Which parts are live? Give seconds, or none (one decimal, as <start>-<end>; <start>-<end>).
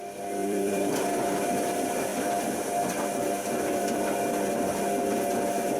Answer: 0.0-0.4; 1.5-5.8